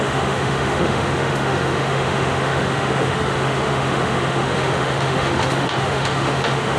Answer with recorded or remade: remade